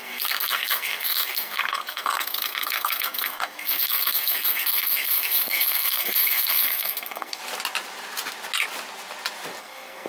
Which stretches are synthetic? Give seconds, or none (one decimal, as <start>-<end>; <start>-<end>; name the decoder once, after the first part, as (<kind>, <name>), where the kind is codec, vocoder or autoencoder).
0.0-7.4 (codec, SNAC); 9.6-10.1